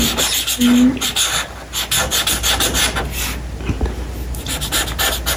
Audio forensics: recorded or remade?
recorded